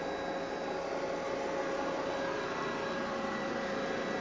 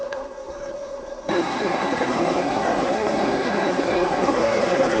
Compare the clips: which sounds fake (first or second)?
second